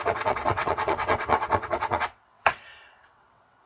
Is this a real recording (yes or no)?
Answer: no